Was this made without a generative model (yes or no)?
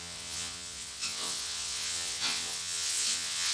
no